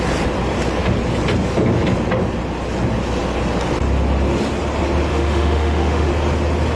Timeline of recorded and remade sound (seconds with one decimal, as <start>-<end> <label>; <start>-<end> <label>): 0.0-5.1 recorded; 5.1-6.1 remade; 6.1-6.8 recorded